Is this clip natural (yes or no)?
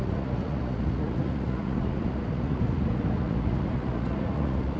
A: no